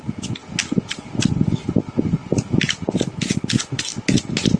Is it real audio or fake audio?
real